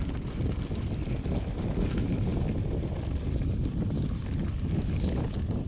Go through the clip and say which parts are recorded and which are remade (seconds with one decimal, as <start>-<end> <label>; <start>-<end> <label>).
0.0-2.3 recorded; 2.3-5.3 remade; 5.3-5.7 recorded